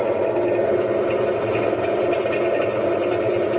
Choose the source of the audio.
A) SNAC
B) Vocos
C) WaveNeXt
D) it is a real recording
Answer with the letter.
D